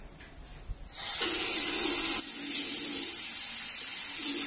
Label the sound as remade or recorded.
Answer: recorded